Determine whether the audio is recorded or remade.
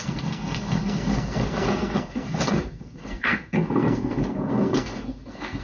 remade